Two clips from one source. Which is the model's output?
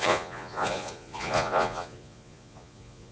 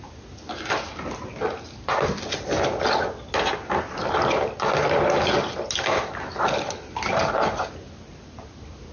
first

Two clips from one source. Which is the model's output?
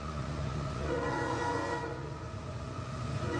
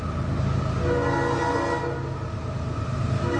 first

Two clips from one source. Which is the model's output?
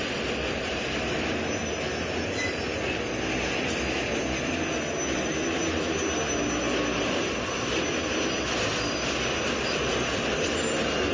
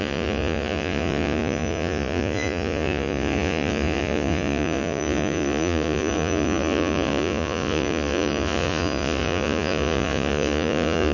second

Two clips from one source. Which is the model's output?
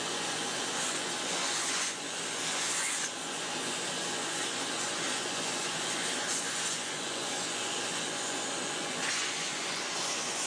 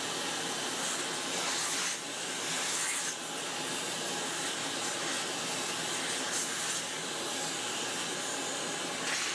first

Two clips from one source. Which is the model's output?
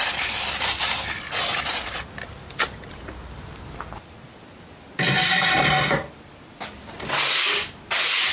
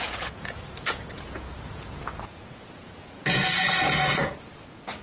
second